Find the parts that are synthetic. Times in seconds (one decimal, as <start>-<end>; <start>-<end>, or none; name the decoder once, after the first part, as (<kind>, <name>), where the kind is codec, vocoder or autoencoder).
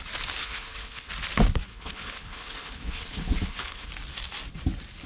0.4-1.1 (codec, HILCodec); 1.7-3.9